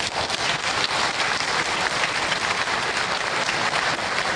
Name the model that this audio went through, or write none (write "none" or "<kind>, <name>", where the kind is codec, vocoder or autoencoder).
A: none